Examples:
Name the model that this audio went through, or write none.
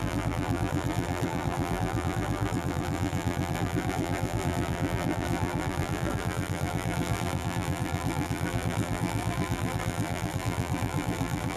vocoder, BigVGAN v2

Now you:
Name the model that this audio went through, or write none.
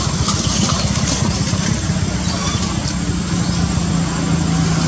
none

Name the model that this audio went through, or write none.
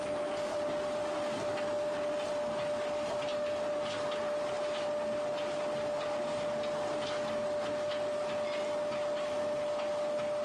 none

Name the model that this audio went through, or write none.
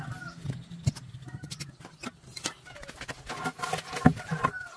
none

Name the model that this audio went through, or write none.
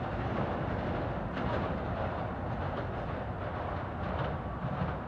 none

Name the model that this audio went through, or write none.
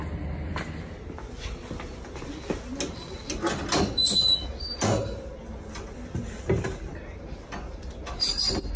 none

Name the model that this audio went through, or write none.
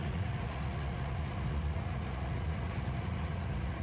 vocoder, Vocos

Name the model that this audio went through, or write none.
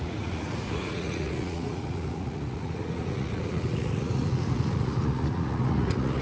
vocoder, Vocos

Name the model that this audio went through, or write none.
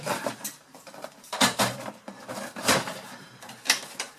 vocoder, BigVGAN v2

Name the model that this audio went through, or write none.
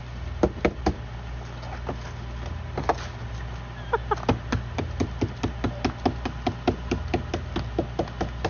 none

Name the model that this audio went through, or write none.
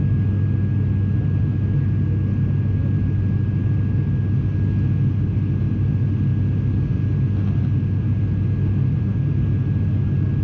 none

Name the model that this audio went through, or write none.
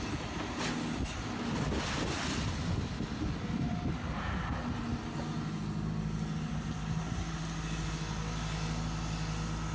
none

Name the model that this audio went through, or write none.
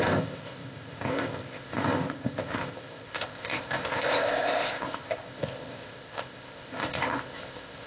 codec, ZipCodec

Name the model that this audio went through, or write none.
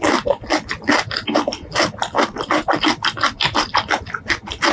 none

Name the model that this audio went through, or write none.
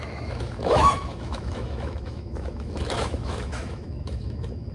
autoencoder, DAC-VAE